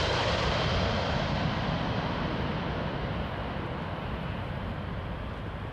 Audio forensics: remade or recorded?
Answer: recorded